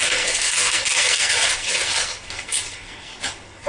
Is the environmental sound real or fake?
fake